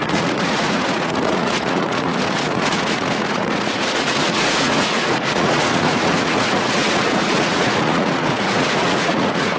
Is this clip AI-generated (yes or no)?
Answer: yes